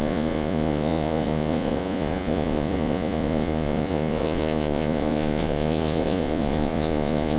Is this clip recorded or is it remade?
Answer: remade